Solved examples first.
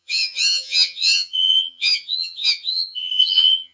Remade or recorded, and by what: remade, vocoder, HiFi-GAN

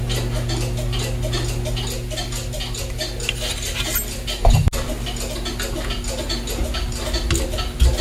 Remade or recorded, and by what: recorded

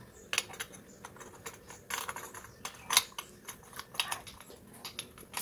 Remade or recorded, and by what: recorded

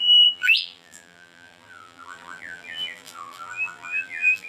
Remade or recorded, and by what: remade, vocoder, BigVGAN v2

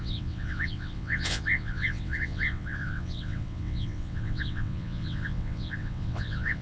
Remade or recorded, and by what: remade, vocoder, WaveNeXt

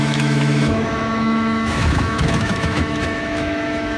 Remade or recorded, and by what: remade, autoencoder, DAC-VAE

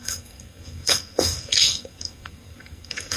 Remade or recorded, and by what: remade, codec, SNAC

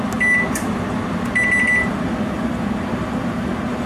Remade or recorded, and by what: recorded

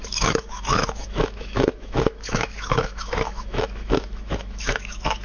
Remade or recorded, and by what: remade, autoencoder, DAC-VAE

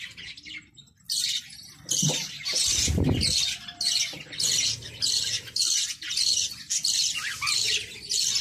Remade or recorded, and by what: recorded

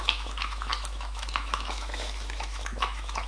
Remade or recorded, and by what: remade, autoencoder, DAC-VAE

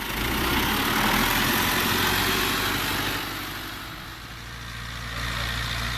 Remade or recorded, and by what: recorded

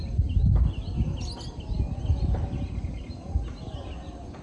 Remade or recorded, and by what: recorded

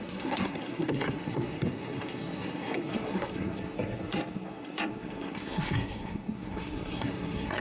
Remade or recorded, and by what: remade, codec, SNAC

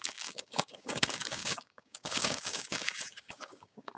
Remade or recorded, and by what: remade, codec, DAC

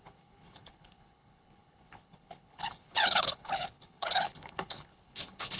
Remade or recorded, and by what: remade, codec, HILCodec